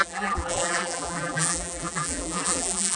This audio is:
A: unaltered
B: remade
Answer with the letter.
B